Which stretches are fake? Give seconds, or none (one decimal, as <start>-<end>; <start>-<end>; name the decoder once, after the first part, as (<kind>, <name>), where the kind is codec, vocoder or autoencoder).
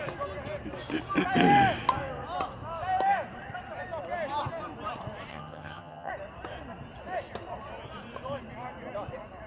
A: 5.3-6.1 (vocoder, HiFi-GAN)